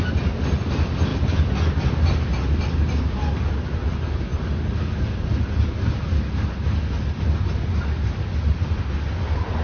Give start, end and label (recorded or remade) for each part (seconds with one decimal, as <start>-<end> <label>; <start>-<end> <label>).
0.0-9.6 recorded